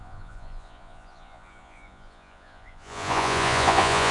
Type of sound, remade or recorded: remade